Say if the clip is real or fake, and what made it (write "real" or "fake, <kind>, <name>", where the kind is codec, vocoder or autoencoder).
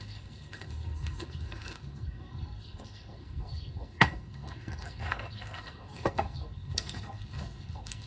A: fake, codec, SNAC